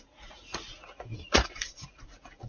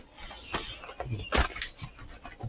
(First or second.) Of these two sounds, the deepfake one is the first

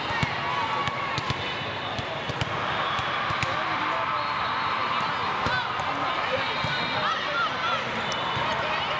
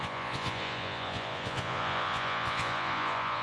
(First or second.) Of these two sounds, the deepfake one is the second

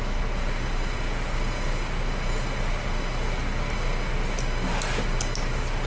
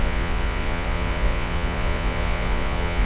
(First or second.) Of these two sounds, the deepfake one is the second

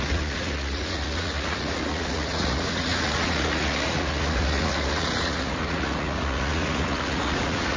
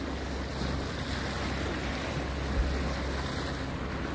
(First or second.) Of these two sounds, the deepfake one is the first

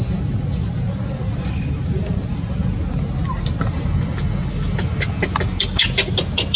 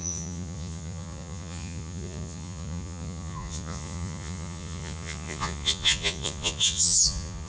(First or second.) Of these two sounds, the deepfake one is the second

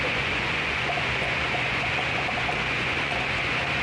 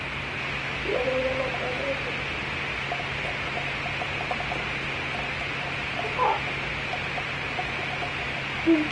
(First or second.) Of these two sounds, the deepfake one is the first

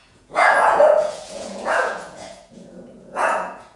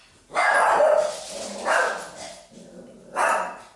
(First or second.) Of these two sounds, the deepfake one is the first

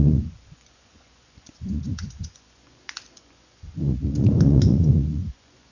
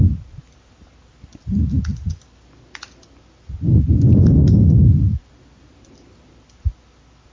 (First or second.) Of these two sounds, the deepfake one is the first